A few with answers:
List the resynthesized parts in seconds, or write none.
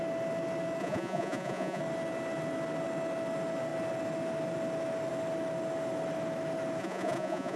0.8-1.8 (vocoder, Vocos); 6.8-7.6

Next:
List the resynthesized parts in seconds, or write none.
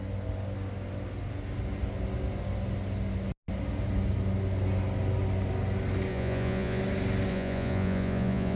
6.1-6.8 (vocoder, Vocos); 7.3-8.6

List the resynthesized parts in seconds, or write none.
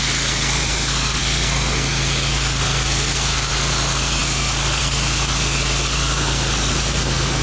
0.0-7.4 (codec, SNAC)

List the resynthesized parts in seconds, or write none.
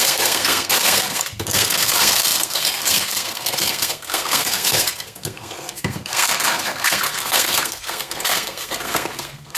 0.0-9.6 (codec, SNAC)